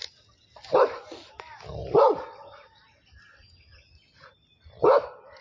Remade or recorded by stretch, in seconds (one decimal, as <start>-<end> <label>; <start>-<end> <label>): 0.0-5.4 recorded